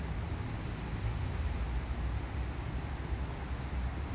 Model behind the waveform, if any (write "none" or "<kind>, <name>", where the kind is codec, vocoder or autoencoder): none